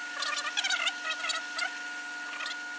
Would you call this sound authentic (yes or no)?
yes